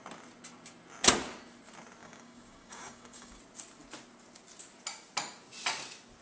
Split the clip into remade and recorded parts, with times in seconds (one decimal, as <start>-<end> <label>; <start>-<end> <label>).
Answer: 0.0-2.0 recorded; 2.0-3.4 remade; 3.4-6.2 recorded